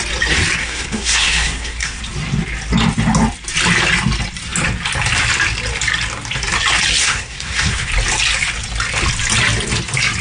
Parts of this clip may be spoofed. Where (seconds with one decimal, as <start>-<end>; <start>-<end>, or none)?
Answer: 0.6-2.0; 7.0-7.9